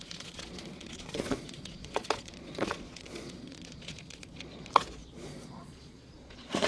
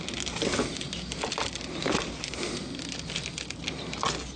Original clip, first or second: second